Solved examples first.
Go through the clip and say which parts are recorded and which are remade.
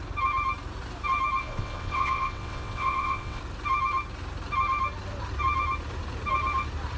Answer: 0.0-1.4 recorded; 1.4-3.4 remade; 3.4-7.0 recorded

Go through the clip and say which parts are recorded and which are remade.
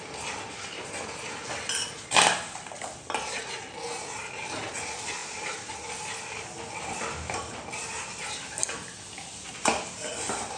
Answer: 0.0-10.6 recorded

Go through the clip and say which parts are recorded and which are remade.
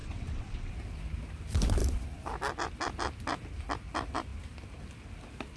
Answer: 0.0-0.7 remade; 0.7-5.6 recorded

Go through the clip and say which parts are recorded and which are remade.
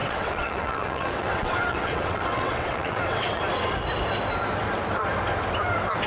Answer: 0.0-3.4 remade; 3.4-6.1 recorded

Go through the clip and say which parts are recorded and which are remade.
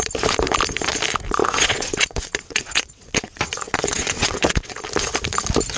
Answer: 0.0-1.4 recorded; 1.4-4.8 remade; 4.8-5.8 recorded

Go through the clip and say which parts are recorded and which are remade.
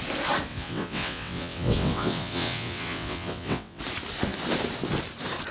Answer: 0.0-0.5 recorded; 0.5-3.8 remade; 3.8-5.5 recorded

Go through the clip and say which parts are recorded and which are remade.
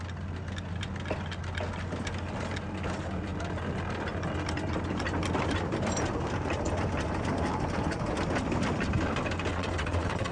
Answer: 0.0-9.5 recorded; 9.5-10.3 remade